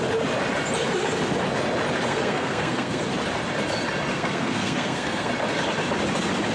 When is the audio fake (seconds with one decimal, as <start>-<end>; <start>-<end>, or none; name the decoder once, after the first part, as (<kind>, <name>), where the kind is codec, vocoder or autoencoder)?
2.1-3.0 (codec, SNAC); 4.1-5.3